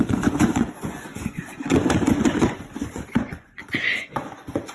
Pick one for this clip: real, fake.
fake